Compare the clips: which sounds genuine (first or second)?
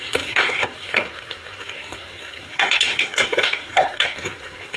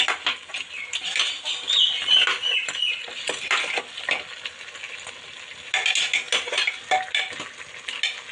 second